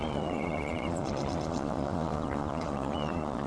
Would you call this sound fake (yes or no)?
yes